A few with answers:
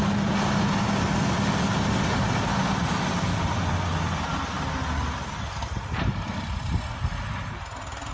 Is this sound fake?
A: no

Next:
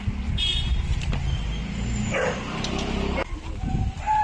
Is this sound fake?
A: no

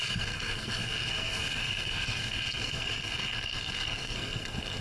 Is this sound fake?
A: yes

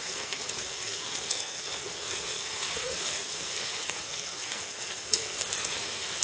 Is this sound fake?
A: yes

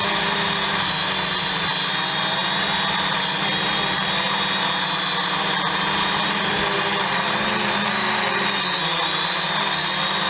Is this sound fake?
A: no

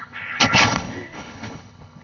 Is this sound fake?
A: yes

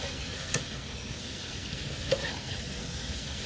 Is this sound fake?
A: yes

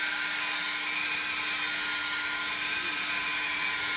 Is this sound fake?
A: no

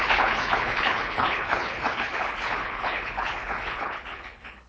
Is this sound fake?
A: yes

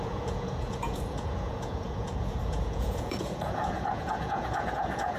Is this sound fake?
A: yes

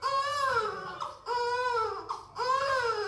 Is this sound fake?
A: no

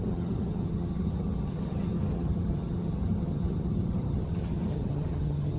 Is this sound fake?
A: yes